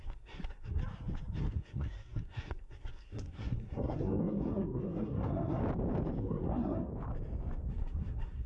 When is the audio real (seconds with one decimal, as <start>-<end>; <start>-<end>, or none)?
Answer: 0.8-1.4; 5.6-6.2; 6.9-7.7